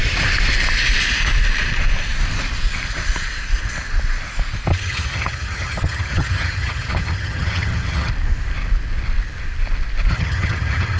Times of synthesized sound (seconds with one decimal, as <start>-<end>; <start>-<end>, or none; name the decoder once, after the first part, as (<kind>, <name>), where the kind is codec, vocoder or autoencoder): 4.7-8.1 (vocoder, HiFi-GAN); 10.1-11.0